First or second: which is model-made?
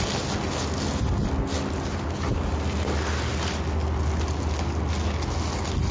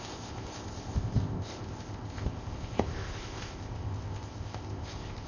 second